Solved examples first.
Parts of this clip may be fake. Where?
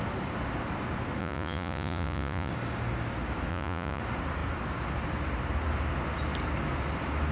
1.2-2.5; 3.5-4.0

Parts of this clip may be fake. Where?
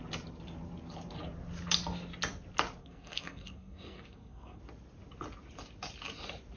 2.8-4.6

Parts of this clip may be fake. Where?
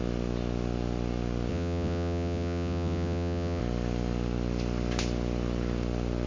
1.5-3.6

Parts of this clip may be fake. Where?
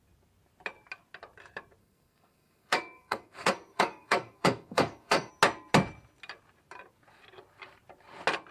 1.8-5.3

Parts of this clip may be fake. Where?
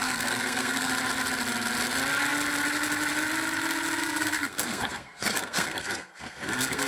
0.0-0.9; 4.0-6.9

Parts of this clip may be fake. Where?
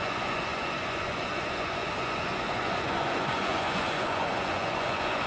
0.0-5.3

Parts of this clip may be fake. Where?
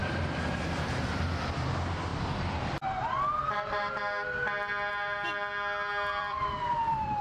6.2-7.2